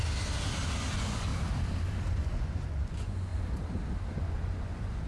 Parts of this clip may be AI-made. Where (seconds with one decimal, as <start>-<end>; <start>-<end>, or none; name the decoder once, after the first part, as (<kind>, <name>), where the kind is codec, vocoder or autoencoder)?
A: 0.9-1.3 (vocoder, Vocos); 2.1-3.3; 4.1-5.1